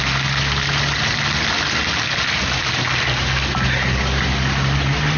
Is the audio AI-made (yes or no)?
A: no